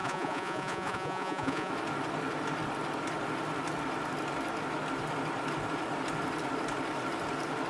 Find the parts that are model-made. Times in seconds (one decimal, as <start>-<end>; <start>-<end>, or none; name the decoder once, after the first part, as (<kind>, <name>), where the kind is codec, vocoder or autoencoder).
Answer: 0.0-1.7 (vocoder, Vocos)

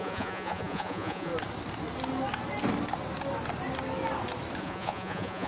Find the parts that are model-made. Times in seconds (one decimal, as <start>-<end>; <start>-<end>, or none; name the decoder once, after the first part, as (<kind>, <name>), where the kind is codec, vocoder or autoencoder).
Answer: 0.0-1.3 (vocoder, Vocos); 4.6-5.5